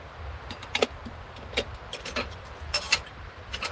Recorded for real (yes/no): yes